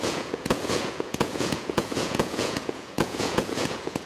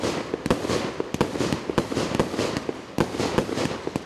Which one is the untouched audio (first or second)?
second